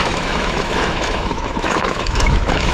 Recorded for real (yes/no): no